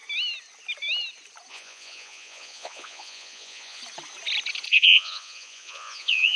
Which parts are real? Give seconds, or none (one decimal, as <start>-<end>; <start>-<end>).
0.0-1.5; 3.8-4.7